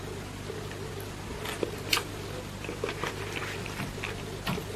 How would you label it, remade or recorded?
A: recorded